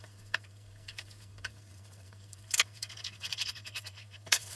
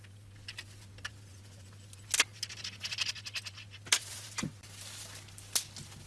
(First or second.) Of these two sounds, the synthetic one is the first